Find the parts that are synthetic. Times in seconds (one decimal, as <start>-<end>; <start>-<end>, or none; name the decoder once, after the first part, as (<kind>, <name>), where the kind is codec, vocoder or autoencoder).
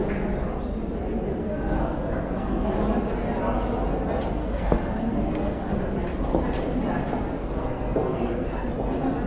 1.4-2.8 (codec, SNAC); 4.4-5.8; 7.4-8.7